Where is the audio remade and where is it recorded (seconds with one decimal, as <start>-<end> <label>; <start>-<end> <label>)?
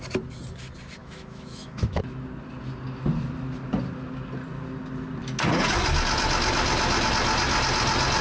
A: 0.0-1.0 recorded; 1.0-2.0 remade; 2.0-8.2 recorded